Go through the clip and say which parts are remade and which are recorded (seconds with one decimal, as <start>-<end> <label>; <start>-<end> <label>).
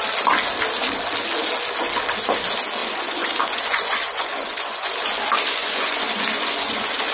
0.0-2.8 recorded; 2.8-4.9 remade; 4.9-5.6 recorded; 5.6-7.1 remade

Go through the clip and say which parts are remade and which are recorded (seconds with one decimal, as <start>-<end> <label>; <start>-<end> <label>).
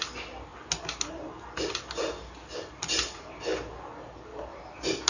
0.0-5.1 recorded